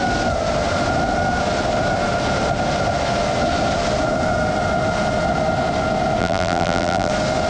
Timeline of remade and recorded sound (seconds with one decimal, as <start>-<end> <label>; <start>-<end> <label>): 0.0-6.2 recorded; 6.2-7.1 remade; 7.1-7.5 recorded